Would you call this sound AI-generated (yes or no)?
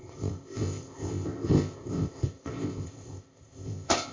yes